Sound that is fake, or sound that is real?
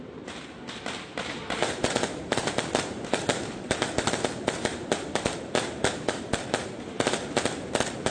real